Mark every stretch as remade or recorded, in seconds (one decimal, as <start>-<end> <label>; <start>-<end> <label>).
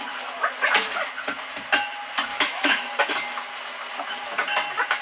0.0-2.3 recorded; 2.3-3.0 remade; 3.0-5.0 recorded